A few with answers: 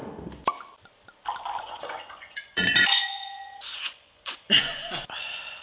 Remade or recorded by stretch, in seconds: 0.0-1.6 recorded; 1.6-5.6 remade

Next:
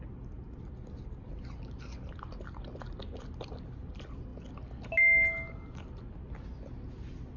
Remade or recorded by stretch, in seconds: 0.0-7.4 recorded